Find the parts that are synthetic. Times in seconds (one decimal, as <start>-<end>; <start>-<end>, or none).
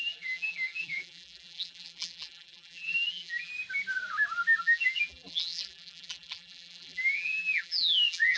0.0-3.5; 4.6-8.4